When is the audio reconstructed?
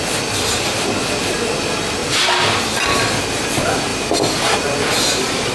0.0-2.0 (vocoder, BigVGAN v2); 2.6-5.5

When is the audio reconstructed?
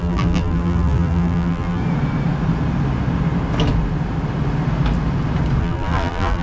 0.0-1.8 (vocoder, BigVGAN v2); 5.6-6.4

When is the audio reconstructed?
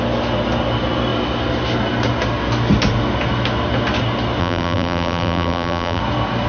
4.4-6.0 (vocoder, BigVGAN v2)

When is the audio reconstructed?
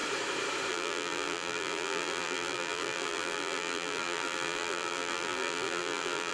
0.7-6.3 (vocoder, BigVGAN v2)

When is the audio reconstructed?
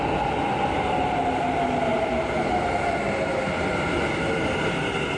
none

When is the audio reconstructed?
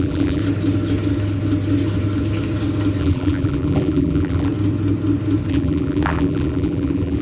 0.0-0.4 (vocoder, BigVGAN v2); 3.0-4.5; 5.5-7.2